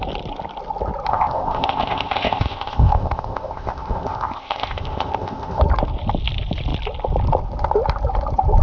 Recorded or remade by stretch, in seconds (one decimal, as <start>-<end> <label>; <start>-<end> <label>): 0.0-1.1 recorded; 1.1-5.6 remade; 5.6-8.6 recorded